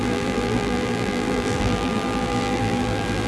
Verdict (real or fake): fake